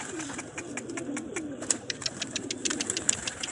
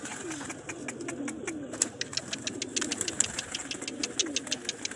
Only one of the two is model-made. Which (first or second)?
first